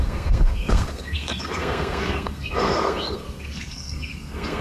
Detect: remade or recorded remade